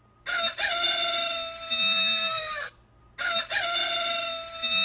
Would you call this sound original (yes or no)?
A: yes